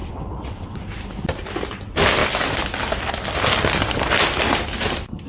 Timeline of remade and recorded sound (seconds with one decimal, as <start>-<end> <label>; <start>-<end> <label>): 0.0-0.8 remade; 0.8-5.3 recorded